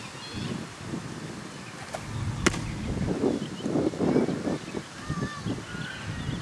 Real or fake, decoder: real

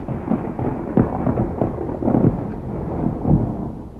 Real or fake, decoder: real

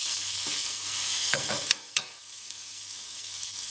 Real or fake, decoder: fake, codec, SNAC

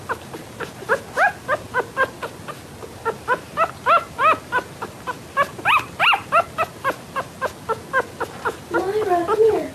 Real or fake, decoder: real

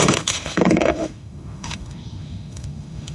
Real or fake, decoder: fake, autoencoder, DAC-VAE